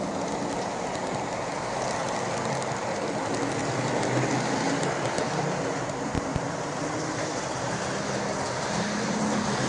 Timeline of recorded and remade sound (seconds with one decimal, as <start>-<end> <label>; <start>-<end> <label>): 0.0-3.6 recorded; 3.6-7.3 remade; 7.3-9.7 recorded